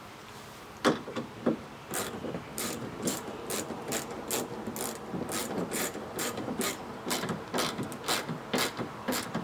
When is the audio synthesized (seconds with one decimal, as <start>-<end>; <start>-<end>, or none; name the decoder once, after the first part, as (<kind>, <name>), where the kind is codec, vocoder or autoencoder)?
2.5-3.4 (vocoder, BigVGAN v2); 5.4-6.8